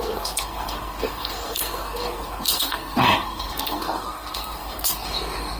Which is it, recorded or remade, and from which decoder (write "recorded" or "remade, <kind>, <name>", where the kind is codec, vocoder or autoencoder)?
remade, codec, SNAC